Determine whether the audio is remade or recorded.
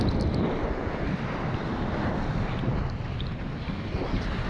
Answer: recorded